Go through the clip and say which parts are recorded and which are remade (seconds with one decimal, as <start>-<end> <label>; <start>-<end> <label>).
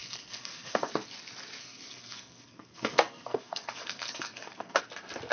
0.0-0.9 remade; 0.9-1.6 recorded; 1.6-4.8 remade; 4.8-5.3 recorded